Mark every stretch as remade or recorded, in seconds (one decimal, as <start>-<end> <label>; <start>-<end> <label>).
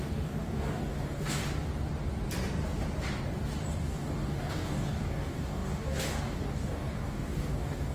0.0-1.4 remade; 1.4-3.7 recorded; 3.7-7.9 remade